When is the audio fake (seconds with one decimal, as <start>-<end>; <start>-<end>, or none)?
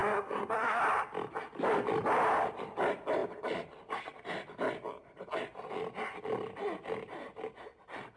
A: 0.0-0.8